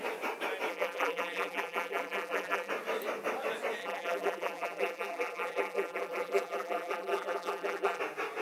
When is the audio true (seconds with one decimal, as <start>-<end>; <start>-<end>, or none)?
0.0-0.7; 2.7-3.8; 8.0-8.4